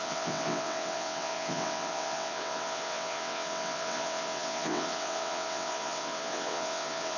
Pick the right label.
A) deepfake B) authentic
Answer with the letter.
A